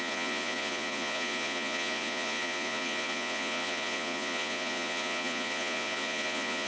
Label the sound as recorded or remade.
remade